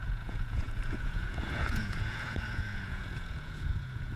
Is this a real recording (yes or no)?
no